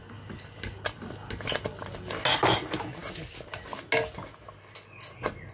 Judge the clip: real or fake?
real